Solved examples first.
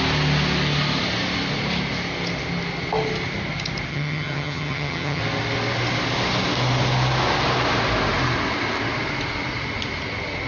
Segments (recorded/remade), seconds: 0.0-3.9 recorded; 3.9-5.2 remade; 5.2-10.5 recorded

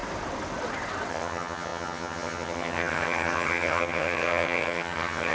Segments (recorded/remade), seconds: 0.0-1.1 recorded; 1.1-5.3 remade